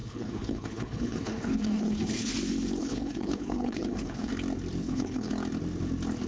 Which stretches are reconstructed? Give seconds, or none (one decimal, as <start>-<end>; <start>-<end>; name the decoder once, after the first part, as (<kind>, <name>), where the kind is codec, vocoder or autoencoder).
0.0-2.3 (codec, HILCodec); 2.8-4.3; 4.8-5.3